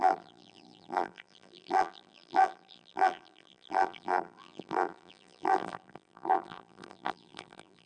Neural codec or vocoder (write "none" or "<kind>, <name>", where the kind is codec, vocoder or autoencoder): vocoder, BigVGAN v2